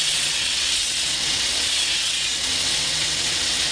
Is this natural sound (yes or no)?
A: no